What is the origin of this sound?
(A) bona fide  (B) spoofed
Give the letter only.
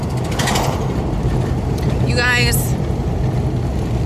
A